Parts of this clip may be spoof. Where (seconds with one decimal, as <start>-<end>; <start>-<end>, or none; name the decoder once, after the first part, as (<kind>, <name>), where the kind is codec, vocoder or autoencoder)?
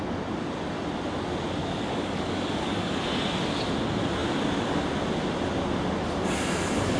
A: 1.6-3.0 (codec, DAC)